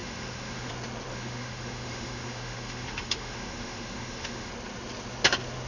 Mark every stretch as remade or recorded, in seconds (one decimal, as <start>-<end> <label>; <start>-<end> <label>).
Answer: 0.0-0.7 remade; 0.7-1.1 recorded; 1.1-4.5 remade; 4.5-5.7 recorded